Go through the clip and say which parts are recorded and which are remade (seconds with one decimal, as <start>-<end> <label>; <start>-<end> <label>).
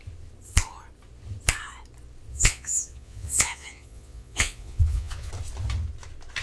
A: 0.0-2.3 recorded; 2.3-5.3 remade; 5.3-6.4 recorded